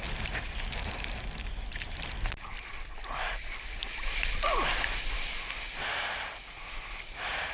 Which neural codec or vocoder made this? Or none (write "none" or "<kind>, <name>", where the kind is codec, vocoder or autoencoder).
none